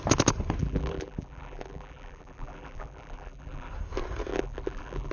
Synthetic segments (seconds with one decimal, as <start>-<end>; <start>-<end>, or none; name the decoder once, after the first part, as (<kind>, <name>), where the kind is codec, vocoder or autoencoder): 0.6-3.7 (vocoder, BigVGAN v2); 4.3-5.1